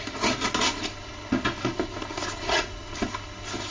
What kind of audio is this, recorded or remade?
recorded